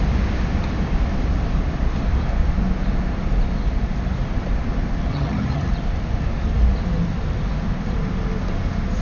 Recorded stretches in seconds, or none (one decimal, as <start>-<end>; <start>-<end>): 0.0-5.1; 5.7-9.0